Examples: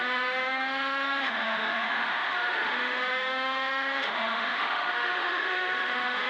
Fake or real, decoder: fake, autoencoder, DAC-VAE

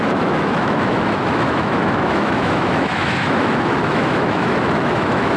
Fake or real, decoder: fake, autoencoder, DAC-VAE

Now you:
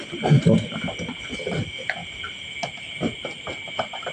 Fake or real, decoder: real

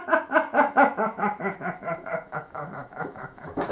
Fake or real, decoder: fake, autoencoder, DAC-VAE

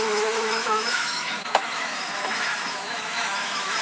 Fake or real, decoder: fake, autoencoder, DAC-VAE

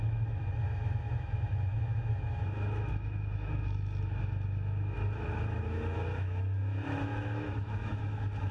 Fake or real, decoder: fake, autoencoder, DAC-VAE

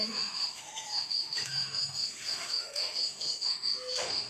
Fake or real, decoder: fake, autoencoder, DAC-VAE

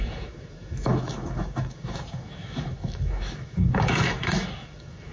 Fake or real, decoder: fake, autoencoder, DAC-VAE